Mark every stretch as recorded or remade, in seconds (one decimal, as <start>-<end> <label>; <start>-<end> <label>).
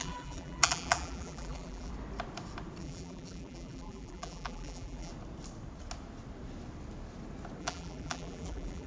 0.0-1.9 remade; 1.9-2.8 recorded; 2.8-5.1 remade; 5.1-7.6 recorded; 7.6-8.9 remade